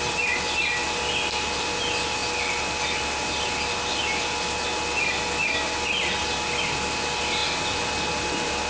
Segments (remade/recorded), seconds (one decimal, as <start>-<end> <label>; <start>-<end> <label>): 0.0-8.7 recorded